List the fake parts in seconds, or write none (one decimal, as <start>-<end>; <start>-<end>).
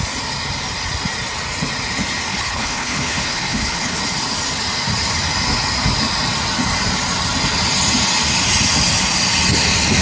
2.3-4.0